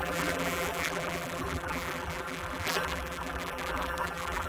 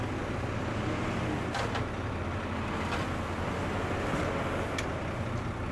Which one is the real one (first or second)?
second